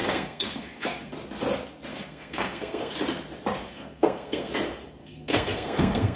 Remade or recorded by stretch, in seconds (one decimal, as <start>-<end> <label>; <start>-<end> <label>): 0.0-1.1 remade; 1.1-1.9 recorded; 1.9-2.9 remade; 2.9-3.6 recorded; 3.6-4.5 remade; 4.5-5.0 recorded; 5.0-6.2 remade

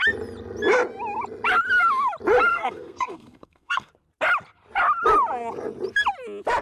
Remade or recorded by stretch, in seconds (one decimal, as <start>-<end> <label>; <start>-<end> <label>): 0.0-2.5 recorded; 2.5-3.9 remade; 3.9-6.6 recorded

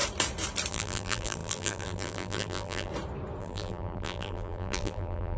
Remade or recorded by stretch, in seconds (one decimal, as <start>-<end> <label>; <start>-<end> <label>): 0.0-0.7 recorded; 0.7-2.9 remade; 2.9-3.4 recorded; 3.4-5.4 remade

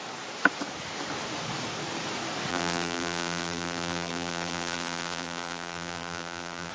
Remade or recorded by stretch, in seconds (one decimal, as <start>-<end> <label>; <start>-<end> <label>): 0.0-2.5 recorded; 2.5-6.7 remade

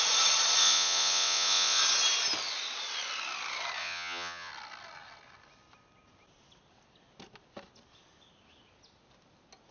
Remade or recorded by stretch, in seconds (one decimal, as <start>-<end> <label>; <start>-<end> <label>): 0.0-0.6 recorded; 0.6-1.8 remade; 1.8-3.8 recorded; 3.8-4.5 remade; 4.5-9.7 recorded

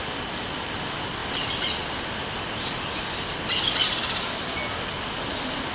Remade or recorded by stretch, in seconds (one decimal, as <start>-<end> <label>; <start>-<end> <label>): 0.0-5.7 recorded

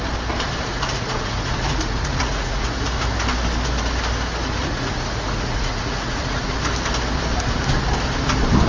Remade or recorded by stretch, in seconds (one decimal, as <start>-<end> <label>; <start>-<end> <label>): 0.0-0.7 recorded; 0.7-3.0 remade; 3.0-4.6 recorded; 4.6-6.5 remade; 6.5-8.7 recorded